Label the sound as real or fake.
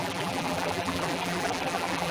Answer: fake